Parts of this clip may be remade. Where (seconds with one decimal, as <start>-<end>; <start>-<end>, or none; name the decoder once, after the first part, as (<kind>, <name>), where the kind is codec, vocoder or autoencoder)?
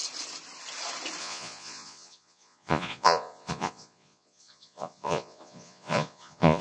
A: 1.2-6.6 (vocoder, Vocos)